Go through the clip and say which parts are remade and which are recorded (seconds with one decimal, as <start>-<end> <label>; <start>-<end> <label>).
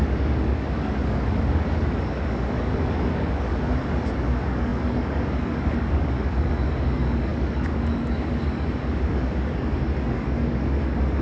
0.0-11.2 remade